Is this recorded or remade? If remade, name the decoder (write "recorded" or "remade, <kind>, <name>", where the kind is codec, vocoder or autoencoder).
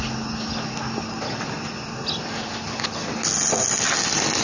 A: recorded